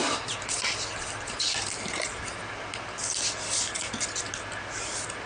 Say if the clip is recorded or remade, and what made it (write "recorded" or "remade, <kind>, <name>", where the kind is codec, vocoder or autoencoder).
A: recorded